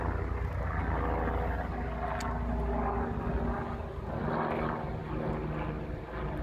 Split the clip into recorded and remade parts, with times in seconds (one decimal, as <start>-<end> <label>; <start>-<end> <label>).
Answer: 0.0-6.4 recorded